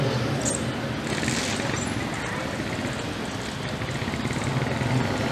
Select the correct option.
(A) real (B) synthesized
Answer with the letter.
A